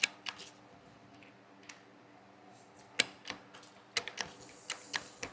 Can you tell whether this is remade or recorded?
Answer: recorded